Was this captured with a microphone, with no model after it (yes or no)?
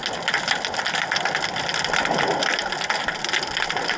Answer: yes